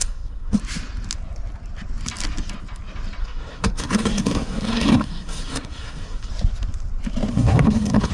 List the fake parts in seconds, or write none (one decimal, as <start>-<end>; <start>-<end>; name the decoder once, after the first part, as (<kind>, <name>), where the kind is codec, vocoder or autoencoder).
0.0-0.6 (codec, SNAC); 3.2-6.3; 7.3-8.1